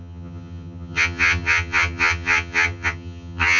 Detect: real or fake fake